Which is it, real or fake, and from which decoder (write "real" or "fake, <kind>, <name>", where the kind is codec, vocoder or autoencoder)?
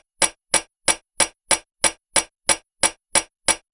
real